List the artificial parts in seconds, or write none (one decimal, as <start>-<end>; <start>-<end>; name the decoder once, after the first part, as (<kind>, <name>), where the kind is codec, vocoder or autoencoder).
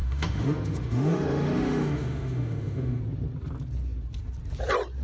0.0-3.0 (autoencoder, DAC-VAE)